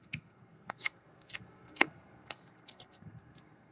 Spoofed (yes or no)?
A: yes